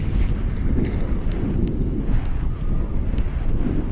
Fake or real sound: real